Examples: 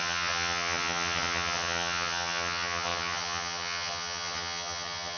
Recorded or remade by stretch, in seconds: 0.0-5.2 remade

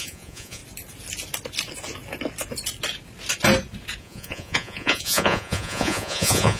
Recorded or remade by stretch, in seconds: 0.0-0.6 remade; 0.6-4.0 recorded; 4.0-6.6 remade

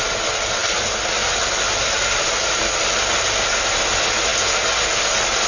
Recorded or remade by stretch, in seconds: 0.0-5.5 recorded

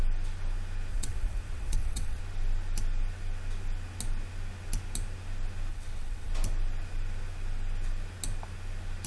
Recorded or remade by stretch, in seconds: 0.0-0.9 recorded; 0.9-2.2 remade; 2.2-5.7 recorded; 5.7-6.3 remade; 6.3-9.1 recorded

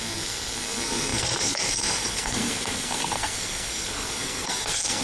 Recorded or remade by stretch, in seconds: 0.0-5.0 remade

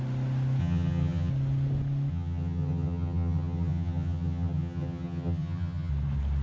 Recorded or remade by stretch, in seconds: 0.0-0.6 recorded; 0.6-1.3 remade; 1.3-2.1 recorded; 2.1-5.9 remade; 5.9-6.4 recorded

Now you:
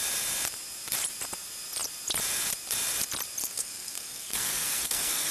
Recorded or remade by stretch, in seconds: 0.0-3.4 recorded; 3.4-5.3 remade